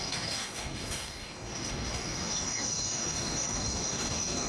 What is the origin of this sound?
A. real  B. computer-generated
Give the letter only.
B